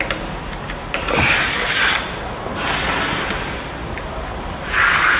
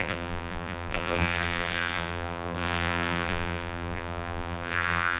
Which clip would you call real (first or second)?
first